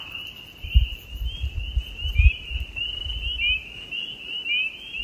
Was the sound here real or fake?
real